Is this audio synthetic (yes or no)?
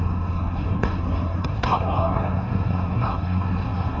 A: yes